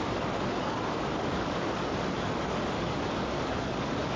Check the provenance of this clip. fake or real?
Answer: fake